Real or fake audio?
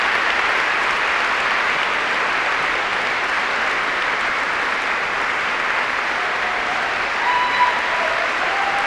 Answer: real